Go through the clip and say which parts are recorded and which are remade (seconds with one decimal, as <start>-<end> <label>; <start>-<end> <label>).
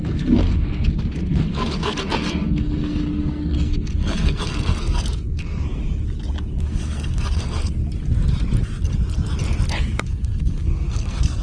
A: 0.0-5.8 remade; 5.8-6.6 recorded; 6.6-7.8 remade; 7.8-9.8 recorded; 9.8-11.4 remade